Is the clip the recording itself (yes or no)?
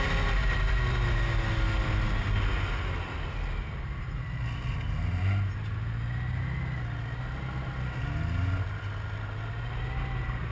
yes